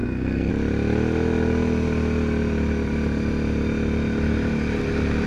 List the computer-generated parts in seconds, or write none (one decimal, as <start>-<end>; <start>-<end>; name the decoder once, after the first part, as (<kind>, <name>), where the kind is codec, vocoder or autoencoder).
0.0-0.5 (codec, SNAC)